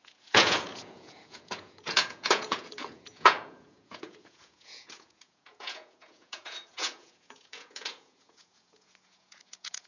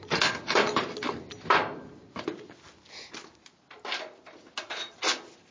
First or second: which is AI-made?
first